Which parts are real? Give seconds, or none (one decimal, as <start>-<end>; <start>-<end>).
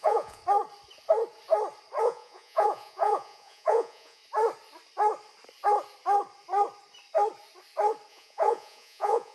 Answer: 0.4-2.0; 4.2-8.1